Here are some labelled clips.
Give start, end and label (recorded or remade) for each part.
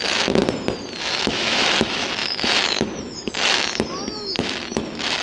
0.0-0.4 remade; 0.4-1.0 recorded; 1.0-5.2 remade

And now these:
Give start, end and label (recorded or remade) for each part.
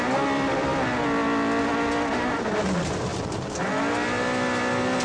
0.0-0.9 remade; 0.9-1.6 recorded; 1.6-3.1 remade; 3.1-3.6 recorded; 3.6-5.0 remade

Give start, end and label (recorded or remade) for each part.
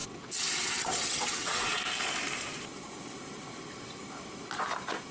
0.0-1.8 remade; 1.8-5.1 recorded